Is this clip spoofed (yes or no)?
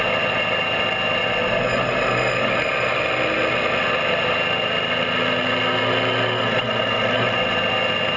no